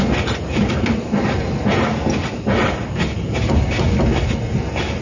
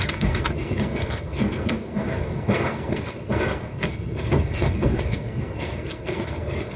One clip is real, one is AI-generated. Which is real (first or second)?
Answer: first